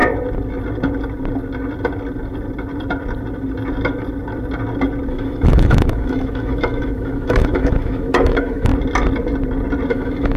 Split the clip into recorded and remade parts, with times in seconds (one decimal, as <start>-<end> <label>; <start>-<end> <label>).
0.0-5.1 recorded; 5.1-8.7 remade; 8.7-9.9 recorded; 9.9-10.4 remade